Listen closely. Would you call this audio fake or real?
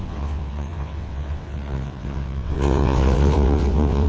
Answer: fake